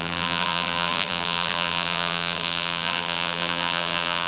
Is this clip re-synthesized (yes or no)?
yes